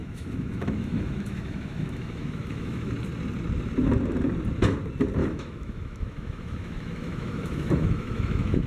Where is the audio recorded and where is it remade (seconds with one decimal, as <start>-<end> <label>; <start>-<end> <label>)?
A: 0.0-2.9 remade; 2.9-5.2 recorded; 5.2-8.7 remade